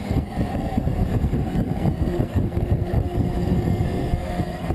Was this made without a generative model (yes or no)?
no